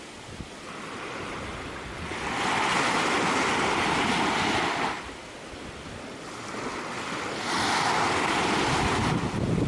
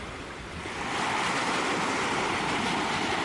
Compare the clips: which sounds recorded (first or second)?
first